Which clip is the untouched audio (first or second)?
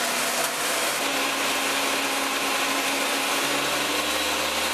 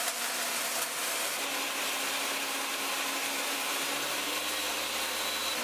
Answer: first